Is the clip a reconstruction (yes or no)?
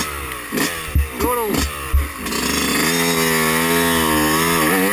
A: no